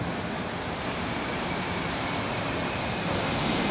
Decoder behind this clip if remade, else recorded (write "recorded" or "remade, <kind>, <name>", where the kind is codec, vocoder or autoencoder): recorded